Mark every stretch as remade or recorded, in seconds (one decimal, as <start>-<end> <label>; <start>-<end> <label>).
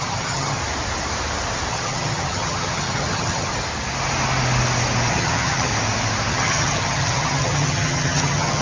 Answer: 0.0-0.6 remade; 0.6-1.7 recorded; 1.7-3.5 remade; 3.5-5.1 recorded; 5.1-5.7 remade; 5.7-6.3 recorded; 6.3-8.6 remade